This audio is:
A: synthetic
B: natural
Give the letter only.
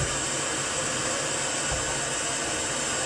B